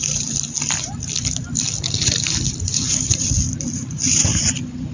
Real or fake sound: fake